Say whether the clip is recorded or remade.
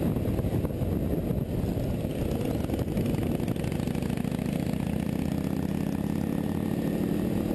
recorded